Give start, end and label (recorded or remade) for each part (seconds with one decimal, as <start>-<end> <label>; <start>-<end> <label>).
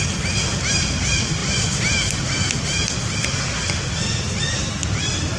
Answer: 0.0-5.4 recorded